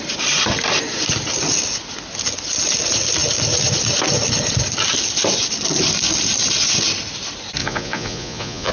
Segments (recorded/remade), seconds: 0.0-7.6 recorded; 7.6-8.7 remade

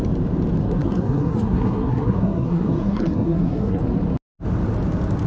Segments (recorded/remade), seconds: 0.0-0.6 recorded; 0.6-3.8 remade; 3.8-5.3 recorded

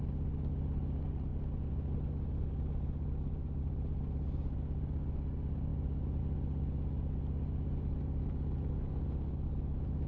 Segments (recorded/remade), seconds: 0.0-10.1 recorded

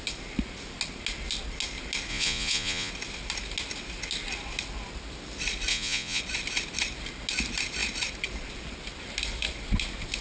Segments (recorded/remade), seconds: 0.0-2.1 recorded; 2.1-2.9 remade; 2.9-5.7 recorded; 5.7-6.2 remade; 6.2-10.2 recorded

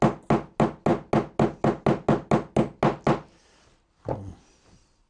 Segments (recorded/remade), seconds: 0.0-5.1 recorded